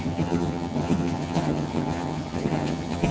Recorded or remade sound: remade